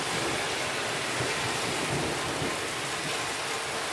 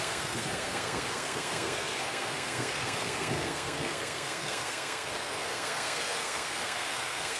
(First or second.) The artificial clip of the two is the second